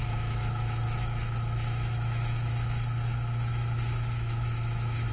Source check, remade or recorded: remade